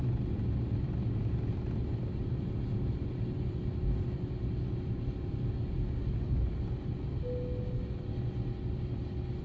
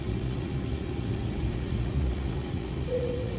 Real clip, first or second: first